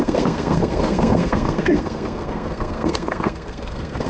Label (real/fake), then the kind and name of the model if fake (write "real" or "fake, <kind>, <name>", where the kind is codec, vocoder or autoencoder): fake, codec, SNAC